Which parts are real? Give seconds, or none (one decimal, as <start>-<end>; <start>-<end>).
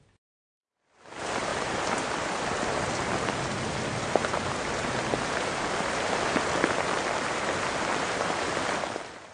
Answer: 0.0-9.3